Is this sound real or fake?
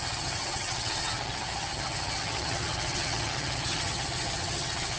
fake